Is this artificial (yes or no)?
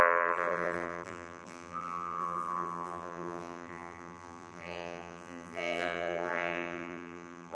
yes